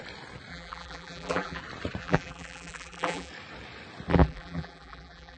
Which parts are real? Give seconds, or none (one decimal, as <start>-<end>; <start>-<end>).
0.0-0.5; 1.6-2.0; 3.3-4.1